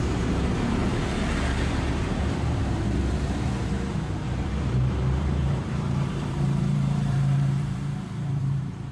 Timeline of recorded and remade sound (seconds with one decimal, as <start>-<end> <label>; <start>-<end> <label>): 0.0-0.8 remade; 0.8-1.7 recorded; 1.7-8.9 remade